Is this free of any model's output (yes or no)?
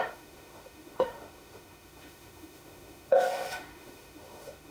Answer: no